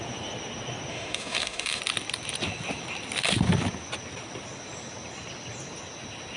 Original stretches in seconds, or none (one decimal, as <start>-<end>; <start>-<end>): 0.0-0.9; 1.8-6.4